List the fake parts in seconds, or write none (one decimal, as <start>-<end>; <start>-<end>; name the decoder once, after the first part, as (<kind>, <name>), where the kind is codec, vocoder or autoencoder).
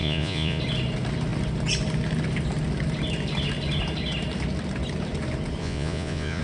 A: 0.0-0.6 (vocoder, Vocos); 5.6-6.4